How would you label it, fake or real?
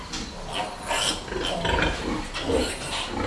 real